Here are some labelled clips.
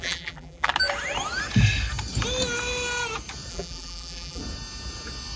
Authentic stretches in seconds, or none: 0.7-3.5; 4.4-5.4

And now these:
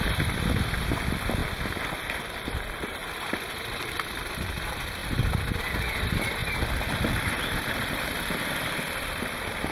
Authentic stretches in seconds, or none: 1.4-2.3; 3.0-4.1; 5.0-5.6; 6.4-7.3